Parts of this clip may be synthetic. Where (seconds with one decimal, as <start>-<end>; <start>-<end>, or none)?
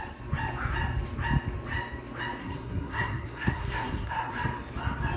2.4-4.3